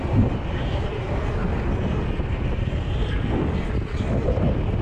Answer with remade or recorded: recorded